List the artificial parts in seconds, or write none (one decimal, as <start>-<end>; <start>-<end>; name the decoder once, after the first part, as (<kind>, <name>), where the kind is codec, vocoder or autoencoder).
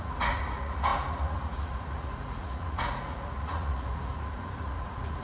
0.0-5.2 (vocoder, Vocos)